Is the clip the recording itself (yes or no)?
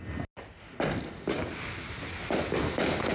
yes